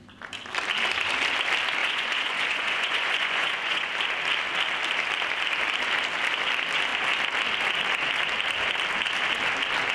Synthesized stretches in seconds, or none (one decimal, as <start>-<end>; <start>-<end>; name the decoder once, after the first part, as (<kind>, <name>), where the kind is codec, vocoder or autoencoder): 1.8-3.9 (vocoder, Vocos)